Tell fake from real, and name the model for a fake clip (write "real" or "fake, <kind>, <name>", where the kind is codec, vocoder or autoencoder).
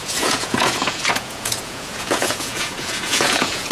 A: fake, vocoder, Vocos